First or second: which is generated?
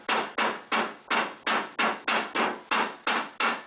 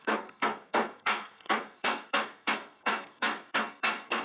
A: second